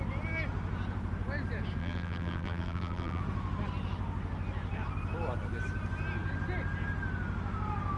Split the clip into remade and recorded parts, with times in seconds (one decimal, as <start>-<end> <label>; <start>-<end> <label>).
0.0-1.8 recorded; 1.8-3.2 remade; 3.2-8.0 recorded

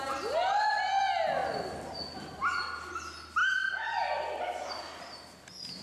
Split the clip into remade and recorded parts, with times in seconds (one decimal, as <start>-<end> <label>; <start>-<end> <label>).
0.0-5.8 recorded

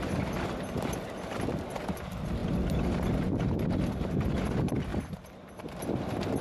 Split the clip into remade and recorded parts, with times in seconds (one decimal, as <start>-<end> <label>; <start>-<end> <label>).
0.0-6.4 recorded